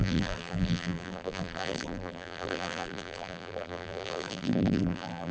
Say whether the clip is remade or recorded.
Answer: remade